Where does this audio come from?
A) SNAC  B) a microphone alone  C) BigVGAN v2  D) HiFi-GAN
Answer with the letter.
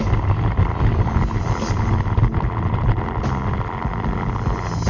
B